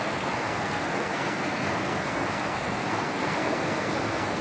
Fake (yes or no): yes